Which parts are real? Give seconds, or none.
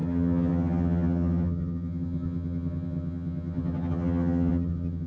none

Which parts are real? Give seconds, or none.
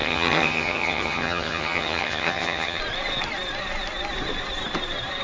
2.8-5.2